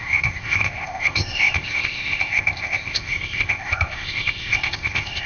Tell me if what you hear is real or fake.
fake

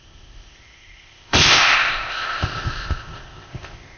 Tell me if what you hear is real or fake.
fake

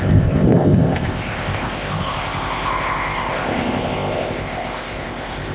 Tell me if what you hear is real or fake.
fake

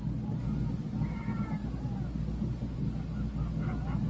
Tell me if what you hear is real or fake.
real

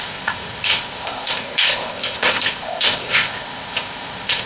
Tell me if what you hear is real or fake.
fake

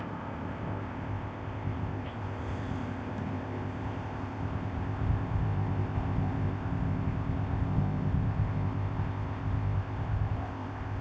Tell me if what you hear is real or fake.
fake